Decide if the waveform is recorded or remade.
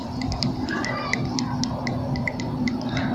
remade